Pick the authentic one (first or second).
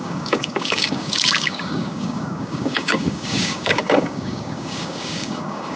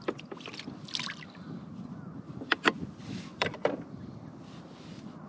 second